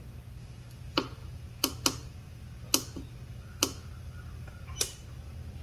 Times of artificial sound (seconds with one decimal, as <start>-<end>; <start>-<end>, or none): none